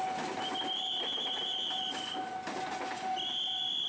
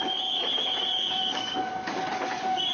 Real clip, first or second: first